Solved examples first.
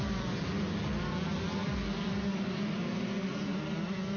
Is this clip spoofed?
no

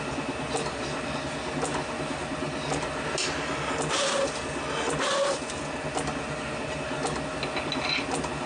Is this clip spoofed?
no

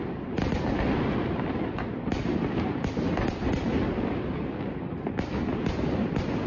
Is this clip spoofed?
no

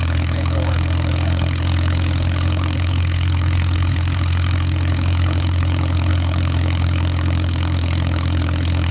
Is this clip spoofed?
yes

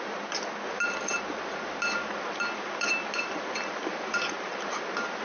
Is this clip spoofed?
no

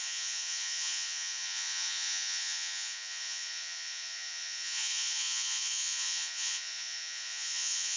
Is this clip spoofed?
yes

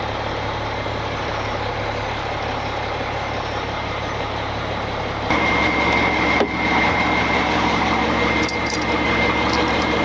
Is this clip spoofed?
yes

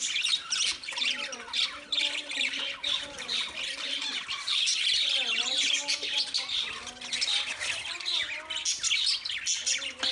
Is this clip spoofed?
no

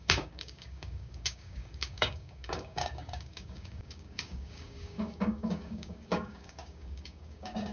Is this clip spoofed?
yes